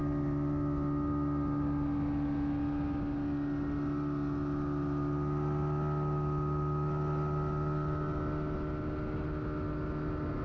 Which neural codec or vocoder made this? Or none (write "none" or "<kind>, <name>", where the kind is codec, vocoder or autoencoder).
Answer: none